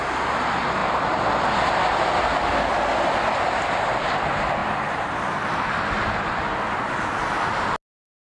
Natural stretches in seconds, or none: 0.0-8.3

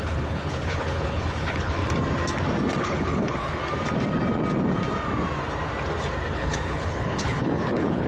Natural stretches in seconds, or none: 1.8-2.8; 3.6-6.3

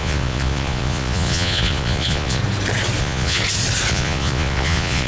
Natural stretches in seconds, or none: 2.4-3.0; 3.4-3.9